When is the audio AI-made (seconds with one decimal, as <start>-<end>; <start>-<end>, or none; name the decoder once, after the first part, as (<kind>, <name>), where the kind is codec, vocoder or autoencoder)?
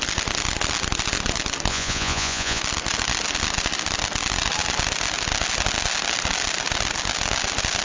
1.7-2.6 (vocoder, Vocos)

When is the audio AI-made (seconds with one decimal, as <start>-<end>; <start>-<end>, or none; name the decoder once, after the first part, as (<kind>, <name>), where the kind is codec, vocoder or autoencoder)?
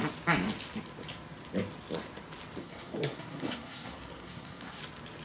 2.6-4.8 (codec, SNAC)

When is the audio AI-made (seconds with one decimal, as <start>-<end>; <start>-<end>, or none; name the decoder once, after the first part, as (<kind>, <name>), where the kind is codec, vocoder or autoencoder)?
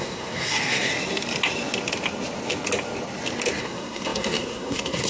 0.0-0.9 (codec, SNAC); 3.6-5.1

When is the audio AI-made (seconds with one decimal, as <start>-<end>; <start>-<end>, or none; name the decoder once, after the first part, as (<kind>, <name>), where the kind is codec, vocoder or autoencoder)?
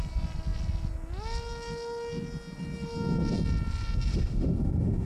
4.1-5.1 (autoencoder, DAC-VAE)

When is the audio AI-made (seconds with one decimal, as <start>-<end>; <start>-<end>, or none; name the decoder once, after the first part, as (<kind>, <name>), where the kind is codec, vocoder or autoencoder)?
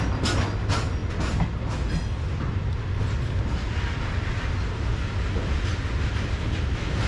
none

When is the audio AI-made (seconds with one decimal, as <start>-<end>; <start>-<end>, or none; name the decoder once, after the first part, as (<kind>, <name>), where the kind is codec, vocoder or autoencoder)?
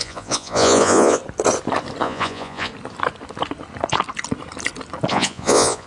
0.0-1.2 (vocoder, Vocos); 2.0-2.7; 5.1-5.9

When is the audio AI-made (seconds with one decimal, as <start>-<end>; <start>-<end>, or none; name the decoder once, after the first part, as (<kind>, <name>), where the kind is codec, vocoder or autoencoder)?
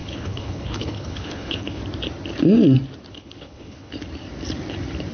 0.0-1.8 (codec, HILCodec); 3.1-3.9